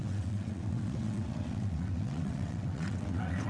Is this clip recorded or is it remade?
remade